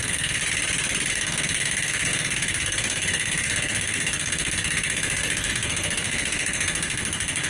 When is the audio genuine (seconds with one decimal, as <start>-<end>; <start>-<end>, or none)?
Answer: 0.4-1.1